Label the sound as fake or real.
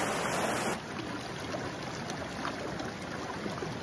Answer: real